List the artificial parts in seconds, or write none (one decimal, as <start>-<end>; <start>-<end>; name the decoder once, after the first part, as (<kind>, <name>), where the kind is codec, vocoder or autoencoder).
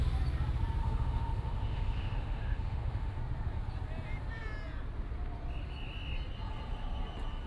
0.8-3.2 (autoencoder, DAC-VAE)